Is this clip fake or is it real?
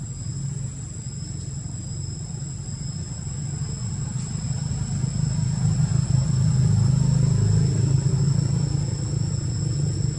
real